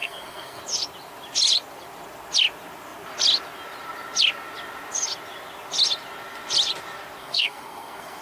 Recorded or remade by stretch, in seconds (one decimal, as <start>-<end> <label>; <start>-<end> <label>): 0.0-0.6 remade; 0.6-7.2 recorded; 7.2-8.2 remade